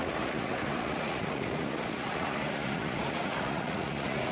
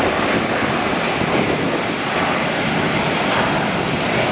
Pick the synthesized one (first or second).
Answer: first